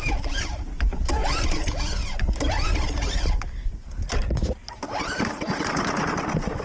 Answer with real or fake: fake